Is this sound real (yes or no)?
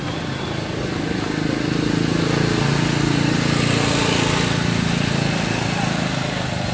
yes